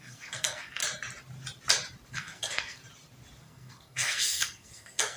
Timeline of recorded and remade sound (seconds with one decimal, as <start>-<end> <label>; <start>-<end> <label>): 0.0-0.8 remade; 0.8-2.1 recorded; 2.1-2.8 remade; 2.8-3.4 recorded; 3.4-5.2 remade